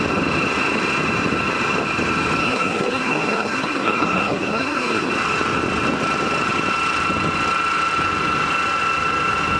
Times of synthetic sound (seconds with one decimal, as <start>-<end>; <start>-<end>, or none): 2.4-5.1